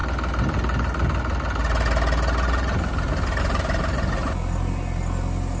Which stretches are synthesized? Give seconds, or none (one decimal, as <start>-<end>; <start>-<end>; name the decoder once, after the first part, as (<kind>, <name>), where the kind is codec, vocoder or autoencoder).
none